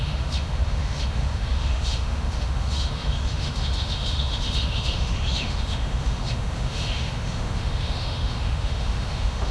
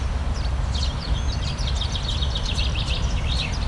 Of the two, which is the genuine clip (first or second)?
second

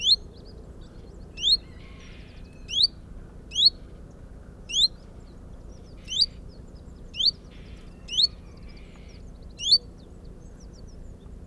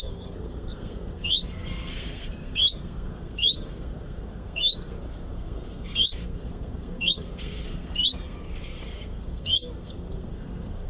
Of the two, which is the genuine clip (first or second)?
first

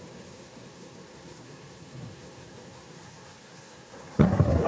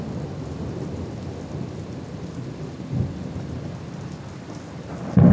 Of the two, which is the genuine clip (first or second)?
second